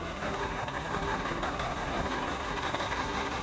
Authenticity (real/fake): fake